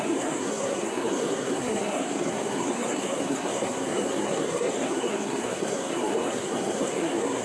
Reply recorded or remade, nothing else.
remade